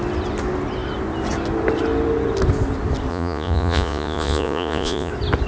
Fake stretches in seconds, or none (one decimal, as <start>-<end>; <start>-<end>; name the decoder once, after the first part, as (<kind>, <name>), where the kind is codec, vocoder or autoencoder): 3.1-5.1 (vocoder, Vocos)